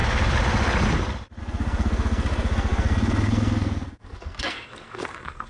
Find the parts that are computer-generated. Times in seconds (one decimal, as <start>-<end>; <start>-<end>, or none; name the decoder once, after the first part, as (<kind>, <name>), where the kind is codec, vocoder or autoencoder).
1.4-5.5 (codec, SNAC)